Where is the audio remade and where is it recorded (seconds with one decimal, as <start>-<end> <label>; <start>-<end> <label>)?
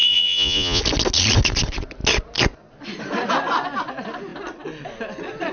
0.0-0.8 remade; 0.8-5.5 recorded